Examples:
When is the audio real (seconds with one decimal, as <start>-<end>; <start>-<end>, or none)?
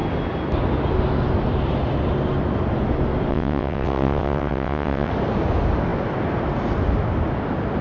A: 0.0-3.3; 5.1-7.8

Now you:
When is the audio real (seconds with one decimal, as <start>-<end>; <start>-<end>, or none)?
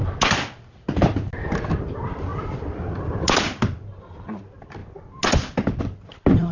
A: 0.0-6.5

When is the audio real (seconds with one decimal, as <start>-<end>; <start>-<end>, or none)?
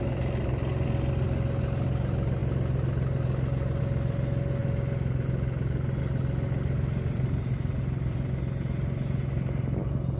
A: 0.0-10.2